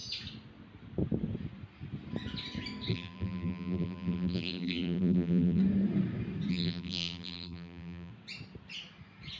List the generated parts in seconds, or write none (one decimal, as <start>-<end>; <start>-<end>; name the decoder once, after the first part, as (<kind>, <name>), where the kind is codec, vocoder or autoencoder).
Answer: 2.9-5.6 (vocoder, BigVGAN v2); 6.5-8.1

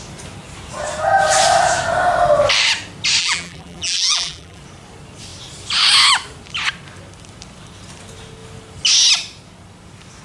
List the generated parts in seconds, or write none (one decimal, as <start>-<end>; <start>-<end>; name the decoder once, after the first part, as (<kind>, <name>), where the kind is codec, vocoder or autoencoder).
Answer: 3.2-4.6 (vocoder, BigVGAN v2)

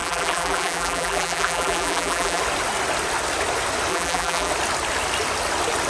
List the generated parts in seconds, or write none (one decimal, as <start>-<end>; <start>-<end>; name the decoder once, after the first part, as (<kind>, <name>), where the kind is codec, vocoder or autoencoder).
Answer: 0.0-2.4 (vocoder, BigVGAN v2); 3.9-4.5

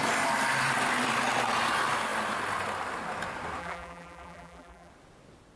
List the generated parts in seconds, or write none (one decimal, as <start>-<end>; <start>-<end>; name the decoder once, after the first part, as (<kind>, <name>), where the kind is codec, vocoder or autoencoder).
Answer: 3.6-4.9 (vocoder, BigVGAN v2)

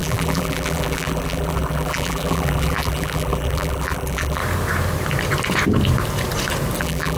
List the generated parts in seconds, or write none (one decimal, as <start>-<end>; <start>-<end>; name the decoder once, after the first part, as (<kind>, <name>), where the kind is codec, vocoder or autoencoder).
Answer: 0.0-4.4 (vocoder, BigVGAN v2); 6.8-7.2